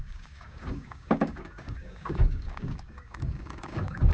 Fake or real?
fake